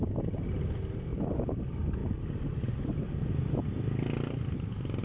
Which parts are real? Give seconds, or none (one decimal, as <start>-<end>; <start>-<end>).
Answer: 0.0-5.0